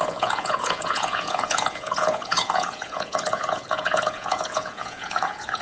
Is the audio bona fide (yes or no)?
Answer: no